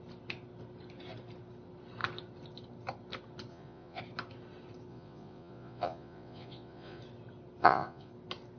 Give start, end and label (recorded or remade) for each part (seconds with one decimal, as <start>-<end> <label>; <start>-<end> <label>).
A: 0.0-3.5 recorded; 3.5-4.0 remade; 4.0-4.9 recorded; 4.9-7.0 remade; 7.0-7.6 recorded; 7.6-8.1 remade; 8.1-8.6 recorded